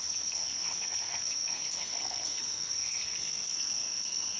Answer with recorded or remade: remade